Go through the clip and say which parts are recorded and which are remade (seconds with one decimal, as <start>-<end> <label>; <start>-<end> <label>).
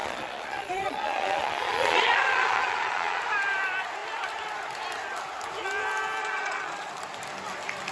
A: 0.0-3.2 remade; 3.2-6.2 recorded; 6.2-6.9 remade; 6.9-7.9 recorded